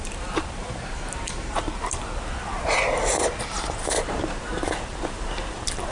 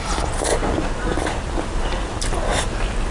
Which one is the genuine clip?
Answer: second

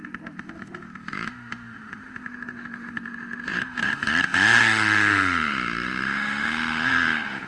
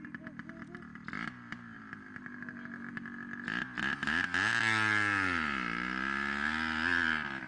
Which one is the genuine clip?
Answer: second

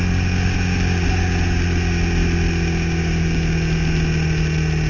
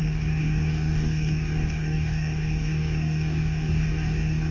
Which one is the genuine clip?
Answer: first